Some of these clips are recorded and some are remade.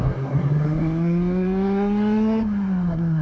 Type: remade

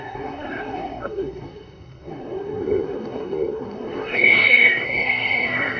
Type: remade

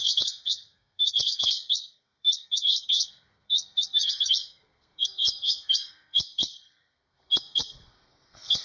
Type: remade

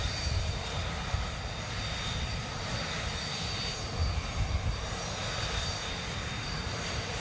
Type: recorded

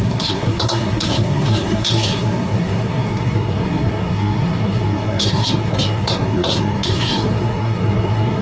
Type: remade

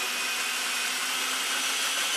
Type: recorded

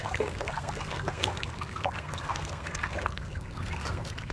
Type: remade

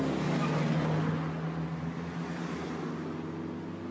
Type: recorded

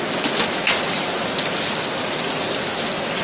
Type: recorded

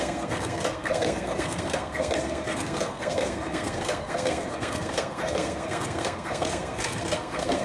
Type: remade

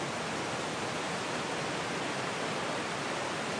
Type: recorded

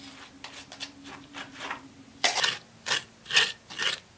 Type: recorded